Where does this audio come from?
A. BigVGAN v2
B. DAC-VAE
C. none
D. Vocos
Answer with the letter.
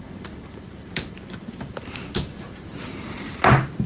C